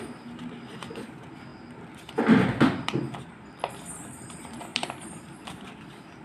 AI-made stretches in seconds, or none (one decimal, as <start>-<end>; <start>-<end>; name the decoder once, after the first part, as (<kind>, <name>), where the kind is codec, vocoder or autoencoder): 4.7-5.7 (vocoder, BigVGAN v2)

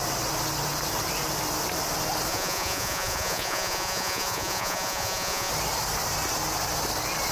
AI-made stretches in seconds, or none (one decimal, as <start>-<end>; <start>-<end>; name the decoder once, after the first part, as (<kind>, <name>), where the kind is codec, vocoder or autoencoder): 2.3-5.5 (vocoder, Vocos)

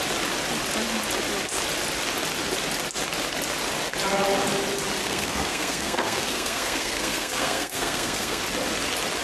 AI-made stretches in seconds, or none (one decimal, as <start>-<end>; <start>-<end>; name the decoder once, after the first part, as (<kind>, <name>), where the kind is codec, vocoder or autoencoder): 5.0-8.4 (codec, SNAC)

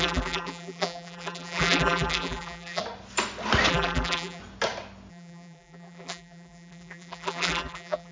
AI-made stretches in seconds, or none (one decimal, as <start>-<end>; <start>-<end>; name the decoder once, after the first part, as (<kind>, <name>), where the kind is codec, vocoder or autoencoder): 0.0-2.8 (vocoder, BigVGAN v2); 3.7-4.4; 5.1-8.1

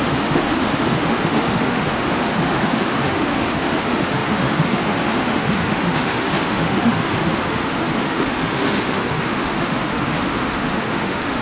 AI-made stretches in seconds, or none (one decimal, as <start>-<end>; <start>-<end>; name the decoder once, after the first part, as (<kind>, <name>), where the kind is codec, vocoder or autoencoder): 0.0-11.4 (autoencoder, DAC-VAE)

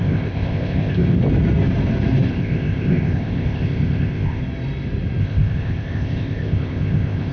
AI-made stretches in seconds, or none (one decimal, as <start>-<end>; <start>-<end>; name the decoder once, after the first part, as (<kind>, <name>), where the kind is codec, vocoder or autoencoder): 0.0-1.2 (codec, ZipCodec); 2.3-4.4; 5.2-7.3

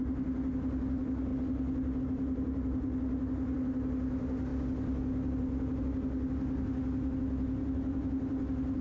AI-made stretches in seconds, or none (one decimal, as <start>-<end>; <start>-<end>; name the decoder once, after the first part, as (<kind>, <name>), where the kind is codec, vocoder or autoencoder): none